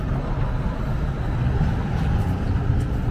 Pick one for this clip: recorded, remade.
recorded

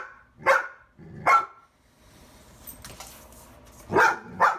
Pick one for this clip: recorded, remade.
recorded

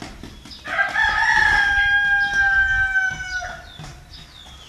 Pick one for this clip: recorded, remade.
recorded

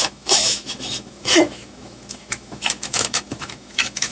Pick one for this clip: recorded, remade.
remade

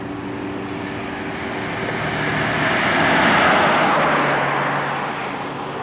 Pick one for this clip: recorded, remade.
recorded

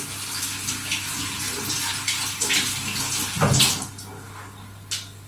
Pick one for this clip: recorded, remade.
recorded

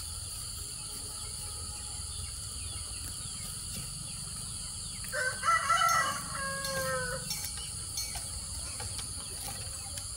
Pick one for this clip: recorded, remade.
recorded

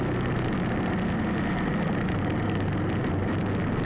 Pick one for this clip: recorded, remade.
recorded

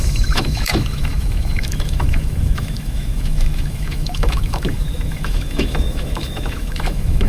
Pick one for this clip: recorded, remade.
remade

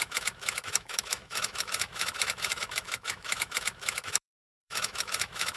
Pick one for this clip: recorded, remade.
remade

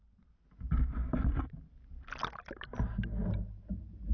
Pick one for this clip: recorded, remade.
recorded